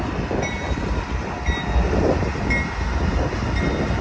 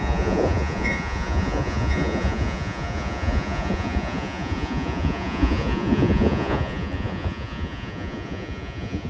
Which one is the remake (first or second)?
second